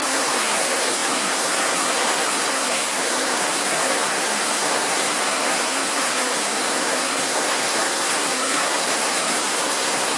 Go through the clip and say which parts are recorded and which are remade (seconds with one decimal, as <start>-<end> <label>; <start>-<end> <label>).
0.0-10.2 remade